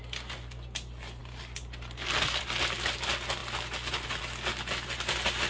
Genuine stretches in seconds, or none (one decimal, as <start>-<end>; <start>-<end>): 0.0-5.5